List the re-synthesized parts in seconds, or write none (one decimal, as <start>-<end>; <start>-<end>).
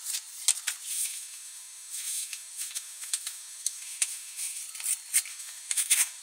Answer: 0.9-4.6; 5.3-6.2